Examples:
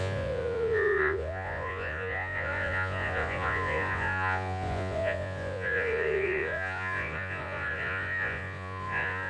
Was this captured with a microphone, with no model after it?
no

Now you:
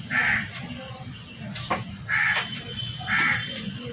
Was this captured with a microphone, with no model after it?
yes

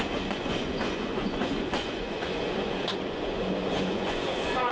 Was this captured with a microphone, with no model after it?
no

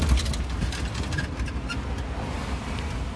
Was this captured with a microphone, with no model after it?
yes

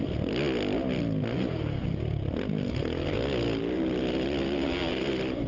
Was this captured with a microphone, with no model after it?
yes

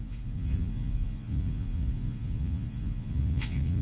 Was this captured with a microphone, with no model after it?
no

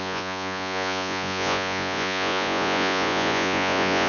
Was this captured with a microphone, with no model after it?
no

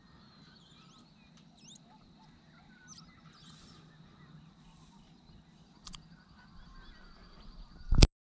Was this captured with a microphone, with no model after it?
yes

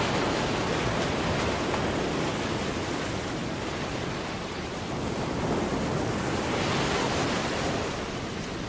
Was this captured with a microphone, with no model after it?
yes